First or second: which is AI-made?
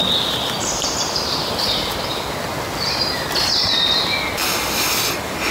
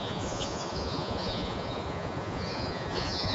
second